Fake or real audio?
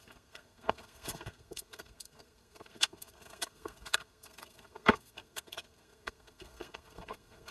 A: fake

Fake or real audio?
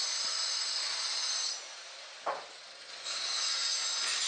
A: real